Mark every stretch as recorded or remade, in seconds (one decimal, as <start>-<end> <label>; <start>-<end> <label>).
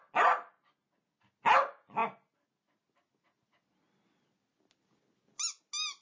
0.0-6.0 recorded